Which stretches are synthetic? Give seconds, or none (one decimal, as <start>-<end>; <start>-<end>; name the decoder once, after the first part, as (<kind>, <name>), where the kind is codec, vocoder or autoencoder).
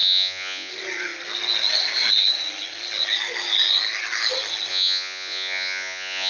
0.0-0.7 (vocoder, Vocos); 4.7-6.3